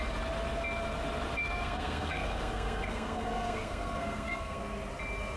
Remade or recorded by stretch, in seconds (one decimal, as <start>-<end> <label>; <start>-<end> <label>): 0.0-1.4 recorded; 1.4-4.6 remade; 4.6-5.4 recorded